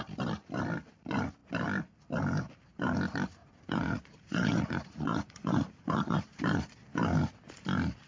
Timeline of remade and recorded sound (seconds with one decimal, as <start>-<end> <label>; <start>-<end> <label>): 0.0-3.4 recorded; 3.4-6.4 remade; 6.4-8.1 recorded